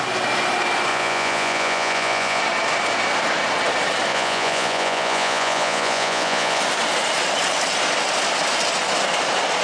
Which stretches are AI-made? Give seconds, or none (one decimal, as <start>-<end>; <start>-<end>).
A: 0.9-2.4; 4.1-6.6